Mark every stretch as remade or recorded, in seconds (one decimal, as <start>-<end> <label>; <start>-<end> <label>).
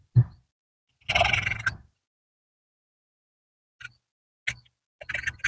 0.0-5.5 recorded